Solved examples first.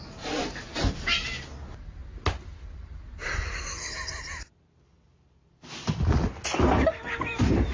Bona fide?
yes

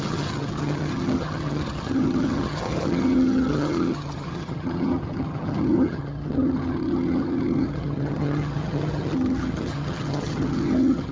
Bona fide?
no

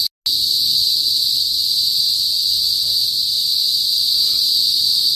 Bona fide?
yes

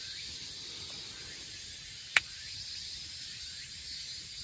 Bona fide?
yes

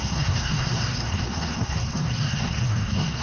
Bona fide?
no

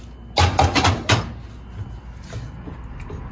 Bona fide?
yes